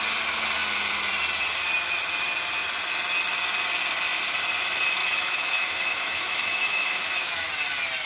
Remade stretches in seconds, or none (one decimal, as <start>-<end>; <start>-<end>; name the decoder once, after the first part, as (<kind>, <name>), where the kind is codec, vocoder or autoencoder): 5.0-7.5 (autoencoder, DAC-VAE)